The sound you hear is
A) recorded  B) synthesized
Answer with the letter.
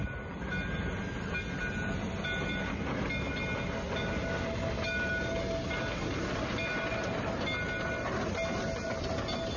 A